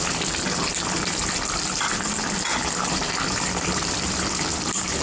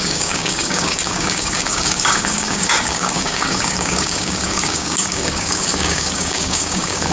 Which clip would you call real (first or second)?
first